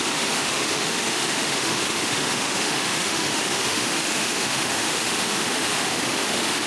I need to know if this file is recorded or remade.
remade